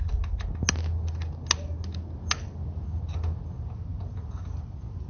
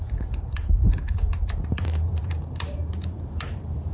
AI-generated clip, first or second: second